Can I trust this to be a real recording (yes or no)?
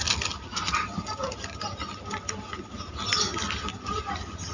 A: yes